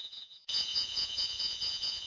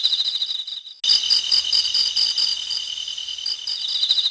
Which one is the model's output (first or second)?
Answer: first